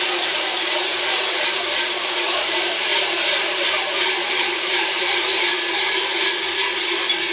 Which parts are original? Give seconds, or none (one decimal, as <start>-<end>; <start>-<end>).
6.1-7.3